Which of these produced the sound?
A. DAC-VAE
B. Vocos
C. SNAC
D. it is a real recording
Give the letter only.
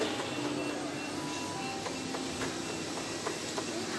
D